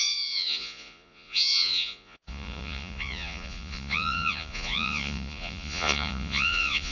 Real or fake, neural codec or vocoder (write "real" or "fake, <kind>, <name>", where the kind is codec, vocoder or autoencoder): fake, vocoder, Vocos